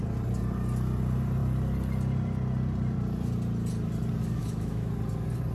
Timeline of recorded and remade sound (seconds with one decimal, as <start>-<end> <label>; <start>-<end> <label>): 0.0-4.4 recorded; 4.4-4.9 remade; 4.9-5.5 recorded